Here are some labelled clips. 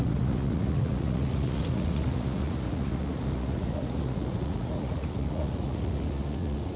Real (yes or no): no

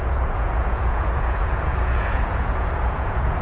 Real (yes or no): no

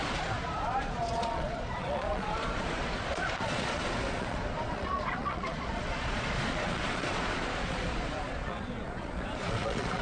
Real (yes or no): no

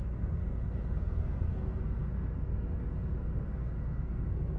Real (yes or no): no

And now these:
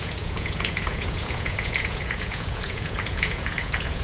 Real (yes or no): no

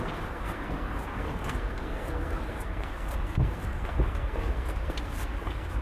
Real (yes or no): no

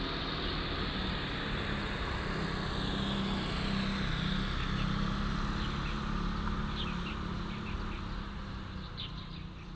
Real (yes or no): yes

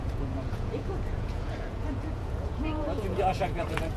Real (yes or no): no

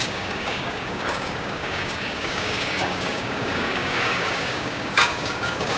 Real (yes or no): no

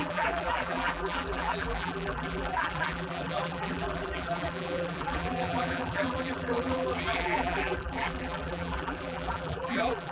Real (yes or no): no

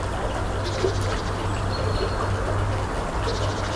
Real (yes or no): yes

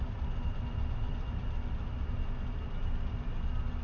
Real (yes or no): yes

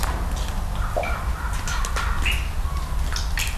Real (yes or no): yes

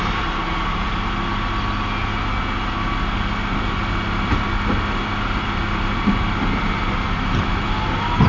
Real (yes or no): yes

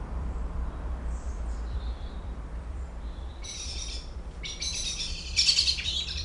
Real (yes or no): no